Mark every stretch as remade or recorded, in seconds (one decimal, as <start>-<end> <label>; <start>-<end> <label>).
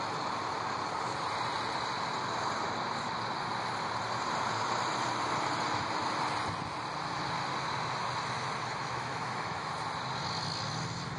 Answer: 0.0-8.8 recorded; 8.8-9.7 remade; 9.7-11.2 recorded